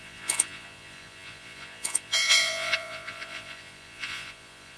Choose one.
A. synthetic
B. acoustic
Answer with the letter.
A